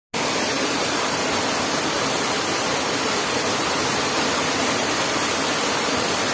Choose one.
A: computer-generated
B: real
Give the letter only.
B